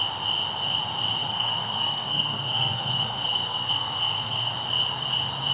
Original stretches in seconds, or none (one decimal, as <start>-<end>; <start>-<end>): 0.0-1.2; 4.5-5.5

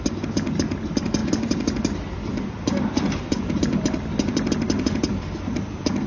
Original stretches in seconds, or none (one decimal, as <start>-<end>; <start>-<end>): 0.0-1.2; 3.9-6.1

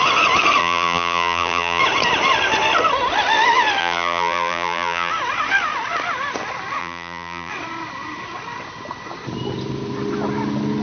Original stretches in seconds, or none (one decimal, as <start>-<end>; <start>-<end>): 0.0-0.6; 1.8-3.8; 5.1-6.8; 7.5-10.8